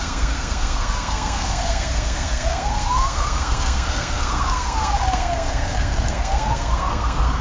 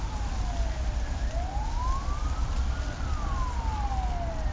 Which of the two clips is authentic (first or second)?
second